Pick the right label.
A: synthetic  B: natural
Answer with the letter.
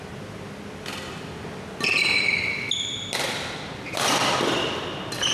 B